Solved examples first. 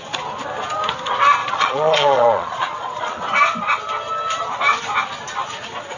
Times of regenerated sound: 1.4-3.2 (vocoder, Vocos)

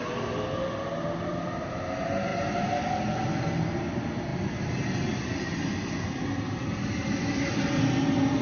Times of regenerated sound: none

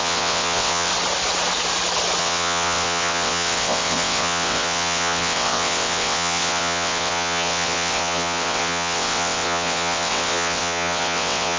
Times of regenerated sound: 0.0-0.9 (vocoder, WaveNeXt); 2.2-11.6

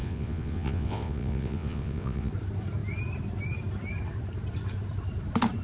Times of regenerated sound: 0.0-2.3 (vocoder, WaveNeXt)

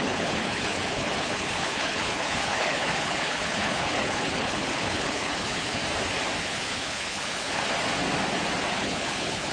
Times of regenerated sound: 0.0-5.8 (codec, HILCodec); 6.4-7.6; 8.7-9.5

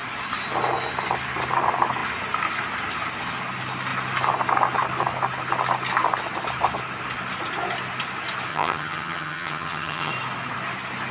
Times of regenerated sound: 8.5-10.1 (vocoder, HiFi-GAN)

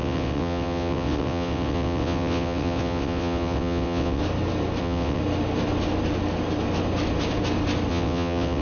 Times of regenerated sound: 0.0-4.2 (vocoder, WaveNeXt); 4.8-5.2; 7.9-8.6